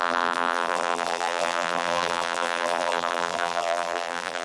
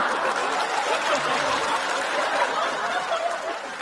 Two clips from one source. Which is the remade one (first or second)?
first